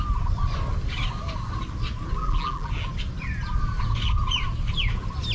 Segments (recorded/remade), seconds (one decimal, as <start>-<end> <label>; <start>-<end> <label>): 0.0-2.2 recorded; 2.2-2.7 remade; 2.7-5.3 recorded